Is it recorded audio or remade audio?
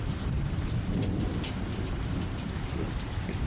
remade